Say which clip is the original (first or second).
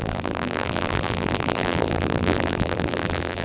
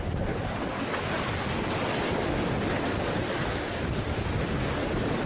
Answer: second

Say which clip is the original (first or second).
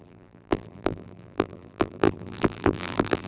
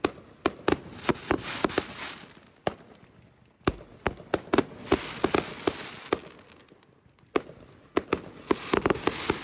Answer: second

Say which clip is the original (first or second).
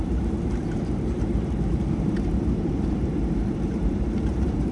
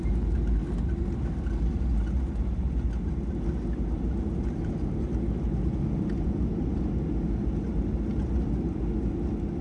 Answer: second